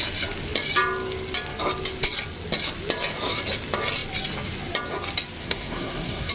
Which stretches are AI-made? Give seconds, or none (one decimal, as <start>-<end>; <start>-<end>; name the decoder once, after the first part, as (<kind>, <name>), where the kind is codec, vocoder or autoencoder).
5.4-6.3 (codec, SNAC)